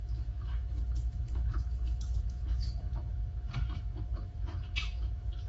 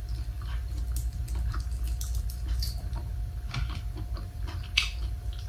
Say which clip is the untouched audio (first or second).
second